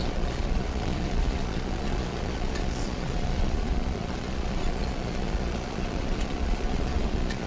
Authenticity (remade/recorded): remade